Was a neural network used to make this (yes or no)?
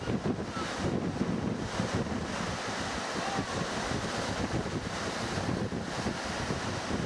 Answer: no